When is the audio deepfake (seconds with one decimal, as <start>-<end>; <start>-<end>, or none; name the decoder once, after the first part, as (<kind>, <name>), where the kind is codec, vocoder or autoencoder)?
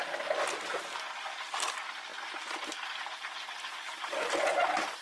none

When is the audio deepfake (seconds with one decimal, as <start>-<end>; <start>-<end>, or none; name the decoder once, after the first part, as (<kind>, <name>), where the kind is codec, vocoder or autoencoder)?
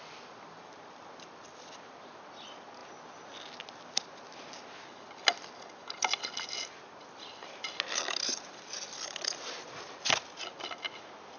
none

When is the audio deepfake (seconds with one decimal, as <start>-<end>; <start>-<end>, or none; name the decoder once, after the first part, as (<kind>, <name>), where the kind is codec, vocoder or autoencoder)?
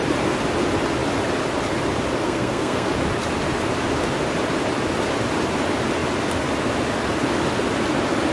2.2-2.9 (codec, SNAC)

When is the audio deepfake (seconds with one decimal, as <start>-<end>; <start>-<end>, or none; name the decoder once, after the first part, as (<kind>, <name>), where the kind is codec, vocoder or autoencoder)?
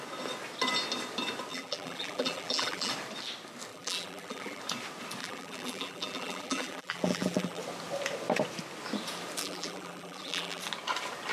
1.5-2.9 (vocoder, BigVGAN v2); 3.7-4.6; 5.2-7.6; 9.4-10.6